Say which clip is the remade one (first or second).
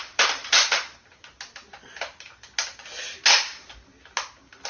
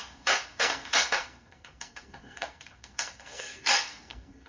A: second